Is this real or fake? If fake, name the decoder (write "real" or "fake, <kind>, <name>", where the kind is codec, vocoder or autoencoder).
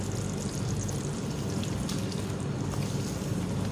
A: real